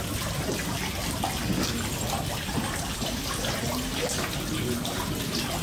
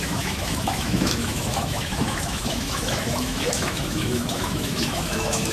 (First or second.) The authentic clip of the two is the first